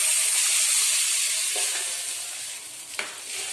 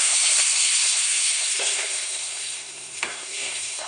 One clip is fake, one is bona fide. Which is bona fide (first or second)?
first